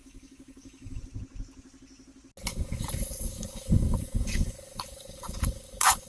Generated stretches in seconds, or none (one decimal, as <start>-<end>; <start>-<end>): 0.0-1.0; 2.5-6.1